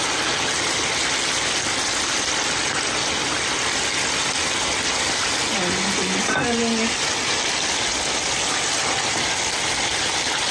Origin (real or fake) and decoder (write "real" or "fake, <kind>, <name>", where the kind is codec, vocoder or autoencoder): real